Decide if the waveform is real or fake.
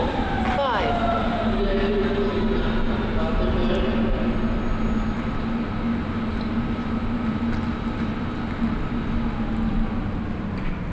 real